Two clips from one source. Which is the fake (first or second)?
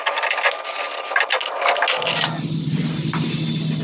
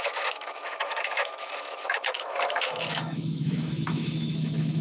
second